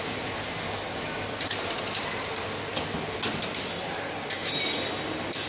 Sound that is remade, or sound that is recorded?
recorded